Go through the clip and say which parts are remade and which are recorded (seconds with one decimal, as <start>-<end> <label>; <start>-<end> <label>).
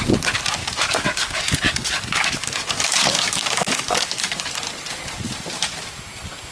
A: 0.0-0.6 recorded; 0.6-4.5 remade; 4.5-6.5 recorded